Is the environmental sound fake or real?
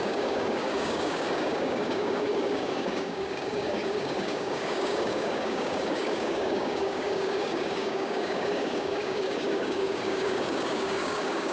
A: fake